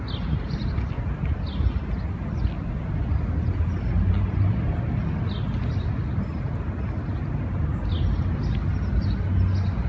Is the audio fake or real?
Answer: real